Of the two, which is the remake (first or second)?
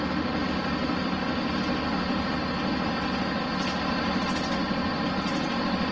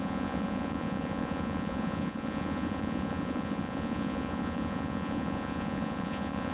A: second